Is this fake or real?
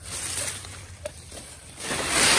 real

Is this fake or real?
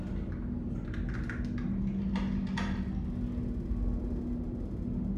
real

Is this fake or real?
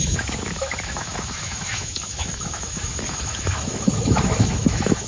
fake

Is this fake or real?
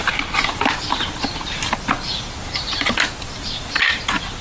real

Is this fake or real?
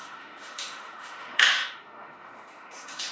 fake